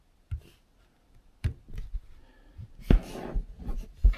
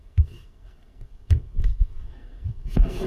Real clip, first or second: first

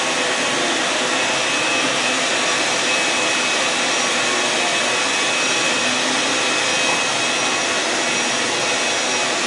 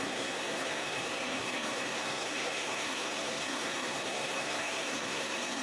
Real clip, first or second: first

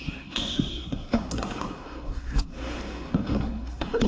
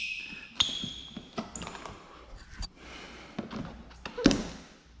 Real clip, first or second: second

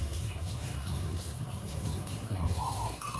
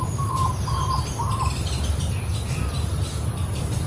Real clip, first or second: second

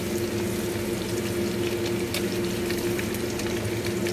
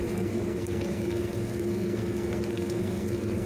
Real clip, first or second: first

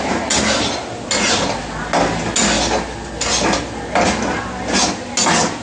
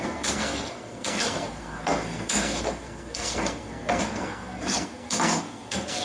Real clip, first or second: first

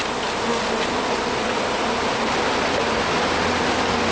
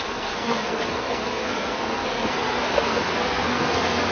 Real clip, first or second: first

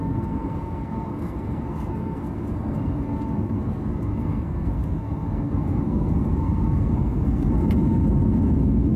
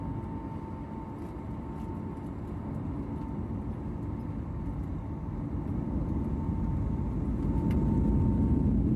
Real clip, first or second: second